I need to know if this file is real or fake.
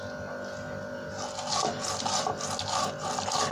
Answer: real